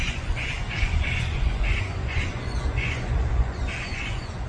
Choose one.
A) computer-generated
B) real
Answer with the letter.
A